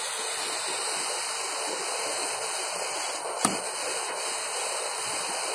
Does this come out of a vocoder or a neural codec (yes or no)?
no